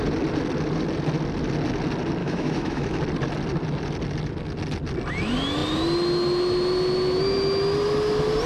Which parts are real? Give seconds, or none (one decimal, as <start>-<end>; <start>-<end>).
0.0-2.2; 3.0-8.5